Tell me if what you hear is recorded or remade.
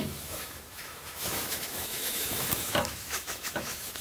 remade